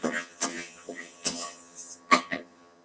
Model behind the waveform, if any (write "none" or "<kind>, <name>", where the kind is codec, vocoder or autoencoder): vocoder, HiFi-GAN